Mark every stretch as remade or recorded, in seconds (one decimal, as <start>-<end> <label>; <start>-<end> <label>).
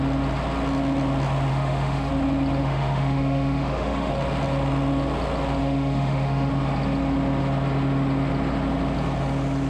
0.0-1.5 recorded; 1.5-2.1 remade; 2.1-2.6 recorded; 2.6-4.1 remade; 4.1-5.6 recorded; 5.6-6.5 remade; 6.5-9.7 recorded